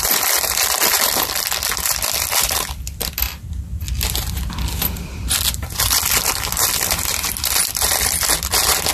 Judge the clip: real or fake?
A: fake